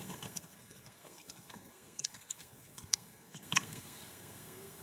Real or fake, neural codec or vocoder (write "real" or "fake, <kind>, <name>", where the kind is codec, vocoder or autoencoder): fake, codec, SNAC